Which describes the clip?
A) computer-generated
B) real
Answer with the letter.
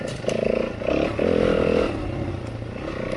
B